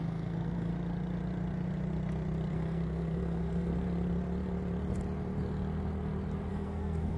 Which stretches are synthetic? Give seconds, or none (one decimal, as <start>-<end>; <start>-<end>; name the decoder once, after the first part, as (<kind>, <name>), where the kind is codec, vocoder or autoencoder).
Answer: 0.0-0.7 (codec, SNAC); 2.5-3.7; 6.5-7.2